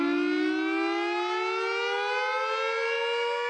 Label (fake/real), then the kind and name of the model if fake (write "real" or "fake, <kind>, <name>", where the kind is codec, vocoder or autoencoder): real